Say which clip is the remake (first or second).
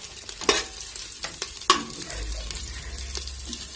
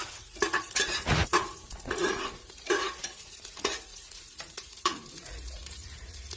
second